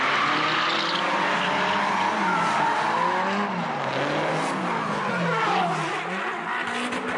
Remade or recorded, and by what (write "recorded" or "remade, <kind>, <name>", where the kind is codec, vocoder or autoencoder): recorded